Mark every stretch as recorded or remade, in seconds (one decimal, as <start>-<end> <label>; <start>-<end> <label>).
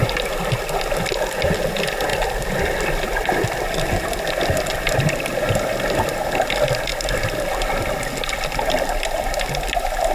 0.0-0.8 remade; 0.8-2.1 recorded; 2.1-4.2 remade; 4.2-10.1 recorded